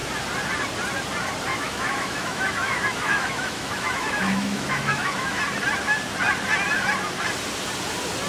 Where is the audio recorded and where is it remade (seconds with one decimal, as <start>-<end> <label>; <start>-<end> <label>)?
0.0-1.5 recorded; 1.5-5.4 remade; 5.4-8.3 recorded